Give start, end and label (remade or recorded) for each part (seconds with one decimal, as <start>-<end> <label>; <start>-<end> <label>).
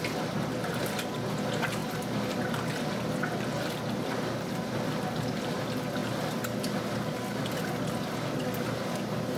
0.0-1.8 recorded; 1.8-2.7 remade; 2.7-3.5 recorded; 3.5-5.6 remade; 5.6-9.4 recorded